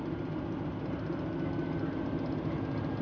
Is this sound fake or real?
real